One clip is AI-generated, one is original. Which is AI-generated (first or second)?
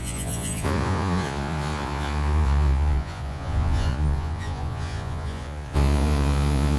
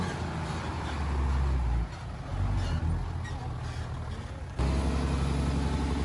first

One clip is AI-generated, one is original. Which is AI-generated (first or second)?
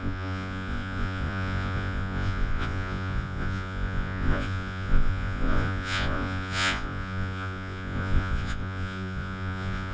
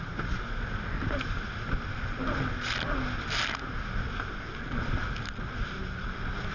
first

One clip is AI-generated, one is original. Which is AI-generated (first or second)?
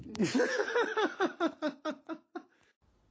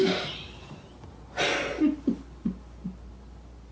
first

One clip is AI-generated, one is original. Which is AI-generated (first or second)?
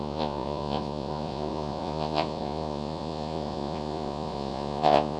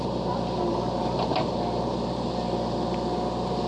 first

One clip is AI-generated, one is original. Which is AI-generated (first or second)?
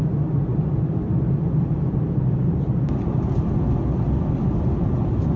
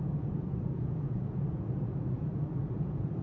second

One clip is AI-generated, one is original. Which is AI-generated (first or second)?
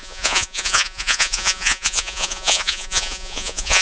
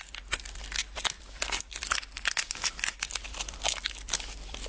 first